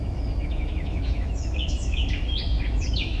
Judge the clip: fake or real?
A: fake